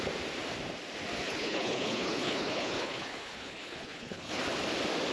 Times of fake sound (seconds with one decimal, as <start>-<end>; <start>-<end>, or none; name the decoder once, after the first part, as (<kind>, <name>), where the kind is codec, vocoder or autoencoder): 1.3-4.4 (codec, HILCodec)